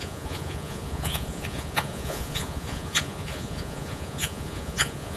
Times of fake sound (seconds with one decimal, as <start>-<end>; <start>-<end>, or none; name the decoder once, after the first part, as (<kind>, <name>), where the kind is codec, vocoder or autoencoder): 0.0-5.2 (vocoder, Vocos)